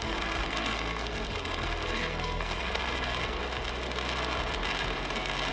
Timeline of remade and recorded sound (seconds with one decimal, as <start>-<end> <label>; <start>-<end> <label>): 0.0-3.4 remade; 3.4-5.5 recorded